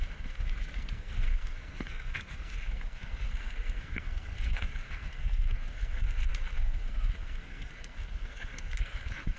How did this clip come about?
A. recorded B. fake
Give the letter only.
B